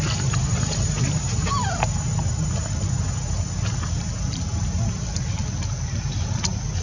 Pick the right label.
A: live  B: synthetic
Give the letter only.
A